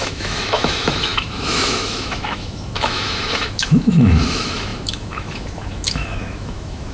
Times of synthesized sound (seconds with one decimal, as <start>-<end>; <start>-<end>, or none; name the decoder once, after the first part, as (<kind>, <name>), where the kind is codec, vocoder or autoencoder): 0.0-6.9 (autoencoder, DAC-VAE)